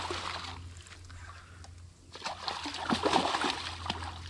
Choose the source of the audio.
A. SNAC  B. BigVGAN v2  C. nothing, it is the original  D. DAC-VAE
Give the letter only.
C